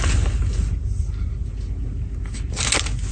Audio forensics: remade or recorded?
recorded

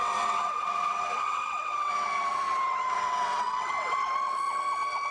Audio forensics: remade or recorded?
remade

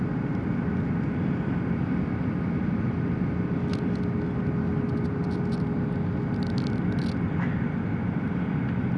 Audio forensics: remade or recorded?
recorded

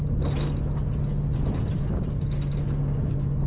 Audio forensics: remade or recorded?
recorded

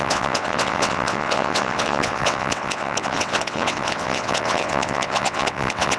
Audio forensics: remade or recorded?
remade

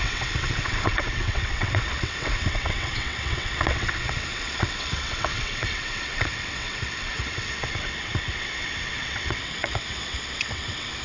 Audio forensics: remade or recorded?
remade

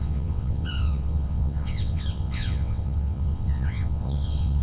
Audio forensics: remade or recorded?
remade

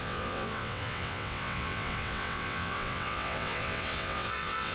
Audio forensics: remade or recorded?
remade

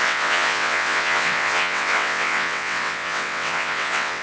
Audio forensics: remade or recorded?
remade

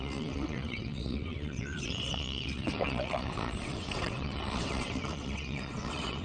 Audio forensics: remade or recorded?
remade